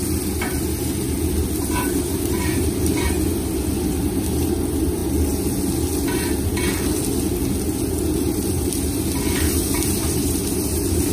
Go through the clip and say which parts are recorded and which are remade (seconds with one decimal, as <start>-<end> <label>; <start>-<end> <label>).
0.0-0.8 recorded; 0.8-5.0 remade; 5.0-6.1 recorded; 6.1-6.5 remade; 6.5-8.2 recorded; 8.2-11.1 remade